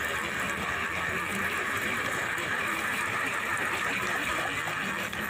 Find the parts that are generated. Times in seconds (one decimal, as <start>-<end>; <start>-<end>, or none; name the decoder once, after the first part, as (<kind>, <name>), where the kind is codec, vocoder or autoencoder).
1.3-4.4 (vocoder, BigVGAN v2)